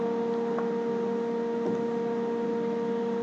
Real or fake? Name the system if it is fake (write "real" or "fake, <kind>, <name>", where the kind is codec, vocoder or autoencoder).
real